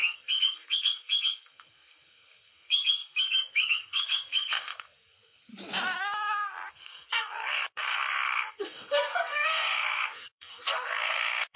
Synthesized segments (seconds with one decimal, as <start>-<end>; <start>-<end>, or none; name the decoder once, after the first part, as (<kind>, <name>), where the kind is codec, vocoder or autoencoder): 0.0-5.5 (codec, SNAC); 6.7-11.6

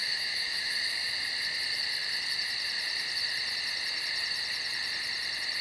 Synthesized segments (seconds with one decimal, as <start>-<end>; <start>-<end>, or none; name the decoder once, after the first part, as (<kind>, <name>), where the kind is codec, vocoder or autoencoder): 0.0-0.7 (autoencoder, DAC-VAE)

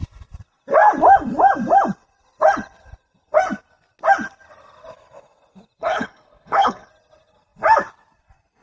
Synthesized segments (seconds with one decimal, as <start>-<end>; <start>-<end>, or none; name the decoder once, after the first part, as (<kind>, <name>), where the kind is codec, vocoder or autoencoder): 5.8-6.9 (codec, HILCodec)

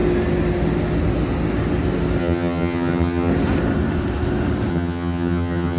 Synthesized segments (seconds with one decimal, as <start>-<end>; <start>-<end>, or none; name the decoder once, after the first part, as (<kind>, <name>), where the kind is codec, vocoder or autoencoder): 2.2-3.3 (vocoder, HiFi-GAN); 4.7-5.8

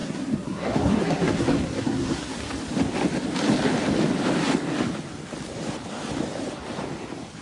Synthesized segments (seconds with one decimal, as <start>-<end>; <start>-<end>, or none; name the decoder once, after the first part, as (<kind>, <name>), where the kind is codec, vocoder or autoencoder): 0.0-2.5 (codec, SNAC)

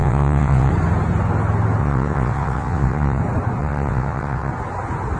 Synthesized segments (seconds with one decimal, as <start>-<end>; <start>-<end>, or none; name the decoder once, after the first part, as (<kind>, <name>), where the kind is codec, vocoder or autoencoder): 0.0-0.7 (vocoder, WaveNeXt); 1.8-3.2; 3.6-4.5

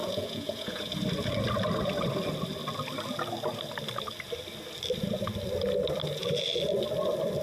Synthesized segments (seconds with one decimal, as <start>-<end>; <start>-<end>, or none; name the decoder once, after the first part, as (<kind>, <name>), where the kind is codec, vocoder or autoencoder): 0.0-0.9 (vocoder, Vocos)